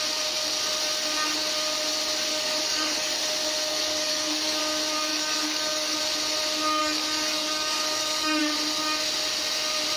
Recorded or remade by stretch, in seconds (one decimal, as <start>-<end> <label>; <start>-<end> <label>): 0.0-2.3 recorded; 2.3-3.2 remade; 3.2-3.7 recorded; 3.7-4.6 remade; 4.6-5.1 recorded; 5.1-6.0 remade; 6.0-6.8 recorded; 6.8-8.4 remade; 8.4-10.0 recorded